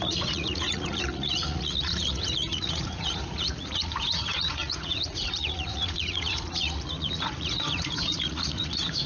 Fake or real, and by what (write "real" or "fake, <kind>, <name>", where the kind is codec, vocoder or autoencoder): fake, vocoder, Vocos